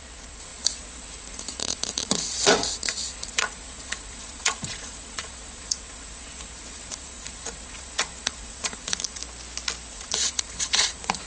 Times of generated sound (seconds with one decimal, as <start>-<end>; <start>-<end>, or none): 0.0-9.2; 9.9-11.3